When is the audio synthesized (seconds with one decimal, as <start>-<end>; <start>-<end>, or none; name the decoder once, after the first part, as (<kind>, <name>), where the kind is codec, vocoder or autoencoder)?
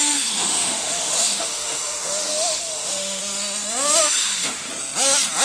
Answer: 0.0-3.2 (autoencoder, DAC-VAE); 4.0-4.7